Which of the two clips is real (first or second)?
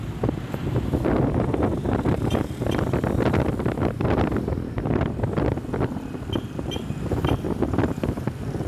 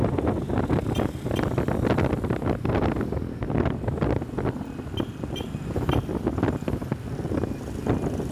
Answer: second